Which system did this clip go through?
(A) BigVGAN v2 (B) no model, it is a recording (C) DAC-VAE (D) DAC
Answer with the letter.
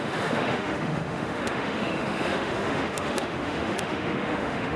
C